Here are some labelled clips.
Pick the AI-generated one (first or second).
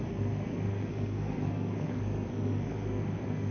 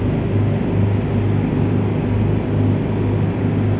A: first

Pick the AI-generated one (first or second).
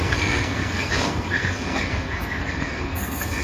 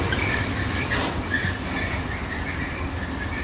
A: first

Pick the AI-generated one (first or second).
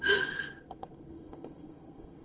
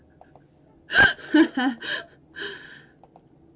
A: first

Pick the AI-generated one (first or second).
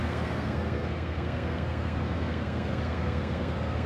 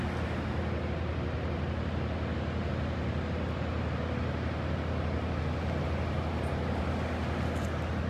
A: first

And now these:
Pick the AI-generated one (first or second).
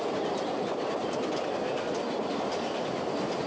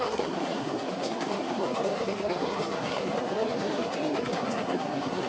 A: second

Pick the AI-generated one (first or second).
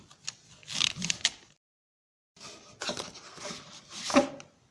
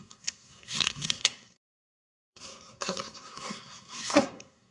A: second